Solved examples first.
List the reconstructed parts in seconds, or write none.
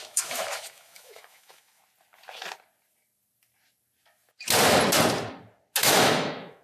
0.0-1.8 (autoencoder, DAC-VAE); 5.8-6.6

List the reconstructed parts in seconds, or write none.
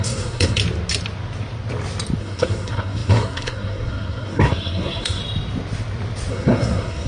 0.0-0.6 (codec, SNAC); 2.2-5.2; 6.3-7.1